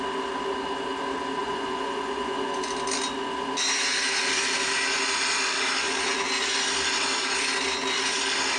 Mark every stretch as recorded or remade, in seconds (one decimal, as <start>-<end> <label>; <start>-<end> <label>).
0.0-1.4 recorded; 1.4-2.7 remade; 2.7-8.6 recorded